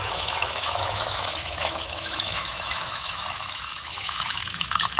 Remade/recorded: remade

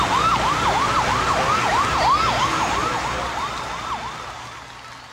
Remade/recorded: recorded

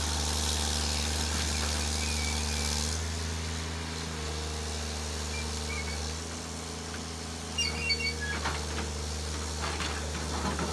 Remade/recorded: recorded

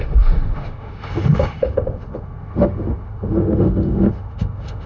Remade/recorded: remade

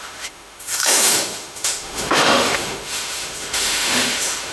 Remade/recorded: remade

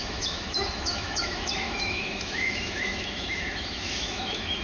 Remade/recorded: remade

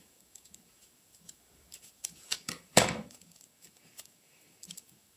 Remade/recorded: remade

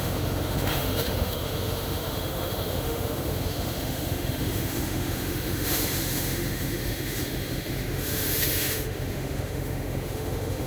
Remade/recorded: remade